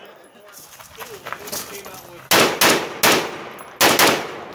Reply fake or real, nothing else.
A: real